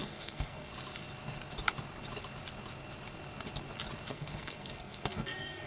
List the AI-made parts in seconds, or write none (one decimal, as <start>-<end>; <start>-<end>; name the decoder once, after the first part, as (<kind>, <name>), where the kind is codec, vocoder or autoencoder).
0.0-0.7 (codec, SNAC); 4.1-5.7